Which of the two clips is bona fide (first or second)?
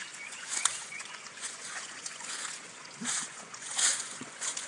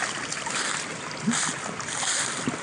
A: second